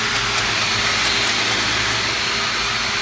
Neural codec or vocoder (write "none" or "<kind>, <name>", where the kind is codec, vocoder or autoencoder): none